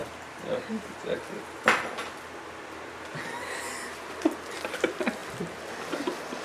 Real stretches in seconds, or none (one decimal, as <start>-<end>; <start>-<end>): 2.1-3.1; 4.7-6.4